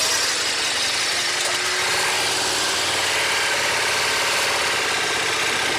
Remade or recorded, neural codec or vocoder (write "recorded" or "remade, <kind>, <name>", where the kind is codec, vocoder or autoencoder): recorded